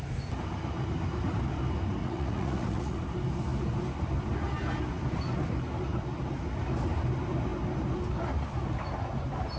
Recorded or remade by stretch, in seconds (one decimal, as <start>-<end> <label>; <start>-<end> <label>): 0.0-2.0 recorded; 2.0-3.0 remade; 3.0-9.6 recorded